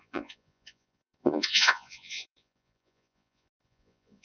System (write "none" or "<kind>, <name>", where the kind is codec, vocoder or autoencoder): vocoder, Vocos